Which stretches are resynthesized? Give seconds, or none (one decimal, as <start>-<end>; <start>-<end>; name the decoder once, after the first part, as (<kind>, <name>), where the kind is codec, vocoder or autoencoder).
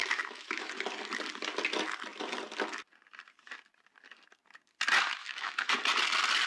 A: 0.0-0.7 (autoencoder, DAC-VAE); 5.2-5.7